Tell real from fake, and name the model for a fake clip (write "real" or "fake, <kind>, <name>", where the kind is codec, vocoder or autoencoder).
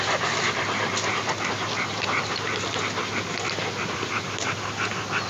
real